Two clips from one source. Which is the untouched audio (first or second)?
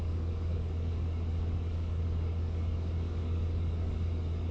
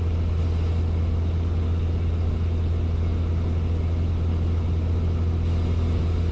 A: second